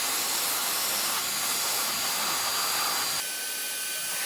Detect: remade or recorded recorded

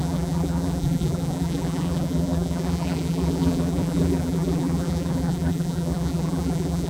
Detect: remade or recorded remade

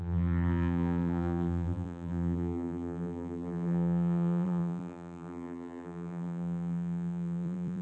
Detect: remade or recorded remade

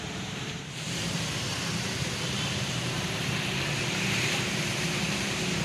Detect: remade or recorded remade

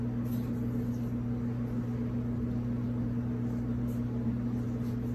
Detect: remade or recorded recorded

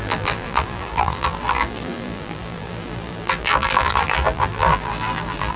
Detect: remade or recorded remade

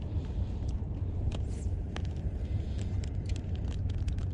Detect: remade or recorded remade